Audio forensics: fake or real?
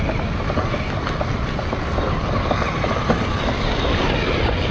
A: real